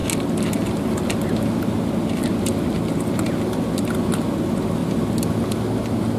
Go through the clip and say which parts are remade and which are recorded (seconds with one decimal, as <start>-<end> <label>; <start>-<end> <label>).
0.0-6.2 recorded